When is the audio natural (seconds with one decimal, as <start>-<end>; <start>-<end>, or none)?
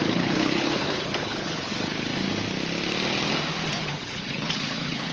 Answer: 2.1-3.8